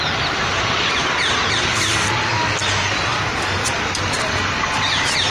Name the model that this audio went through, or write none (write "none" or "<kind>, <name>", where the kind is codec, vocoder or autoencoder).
none